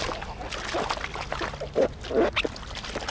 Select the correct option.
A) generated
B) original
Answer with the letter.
B